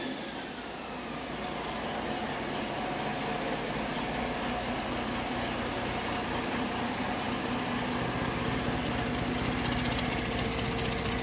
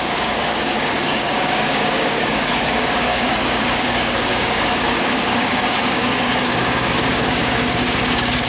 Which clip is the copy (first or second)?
second